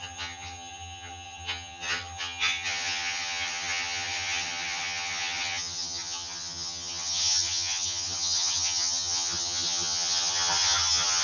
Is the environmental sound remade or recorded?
remade